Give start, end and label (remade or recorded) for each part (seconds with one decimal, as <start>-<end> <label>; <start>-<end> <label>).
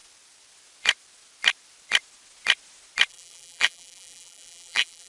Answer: 0.0-3.1 recorded; 3.1-5.1 remade